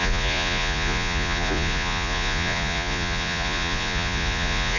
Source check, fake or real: fake